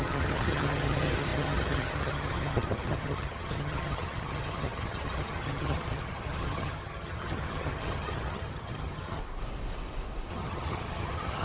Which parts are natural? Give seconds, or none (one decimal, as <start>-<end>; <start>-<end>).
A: 9.2-10.3

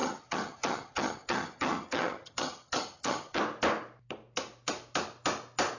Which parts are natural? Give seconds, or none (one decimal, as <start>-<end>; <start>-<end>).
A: 3.4-5.8